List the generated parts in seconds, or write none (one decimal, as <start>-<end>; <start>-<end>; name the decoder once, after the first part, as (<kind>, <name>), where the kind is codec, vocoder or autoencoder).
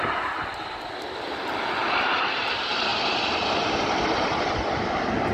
none